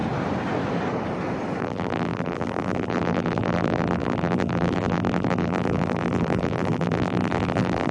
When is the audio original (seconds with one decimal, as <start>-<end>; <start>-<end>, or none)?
0.0-1.6